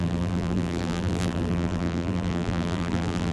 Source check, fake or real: fake